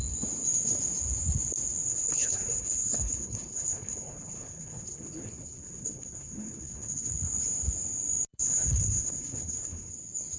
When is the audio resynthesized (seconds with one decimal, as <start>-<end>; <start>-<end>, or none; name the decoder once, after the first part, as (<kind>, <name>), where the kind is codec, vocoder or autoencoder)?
1.9-7.1 (codec, HILCodec); 8.3-9.9